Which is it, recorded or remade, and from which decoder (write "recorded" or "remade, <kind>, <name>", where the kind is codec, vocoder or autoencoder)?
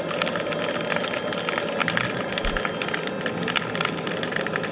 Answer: recorded